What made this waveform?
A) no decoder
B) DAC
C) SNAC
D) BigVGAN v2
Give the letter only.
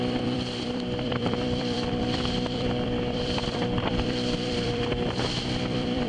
D